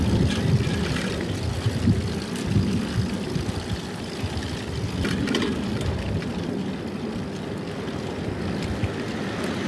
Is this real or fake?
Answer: real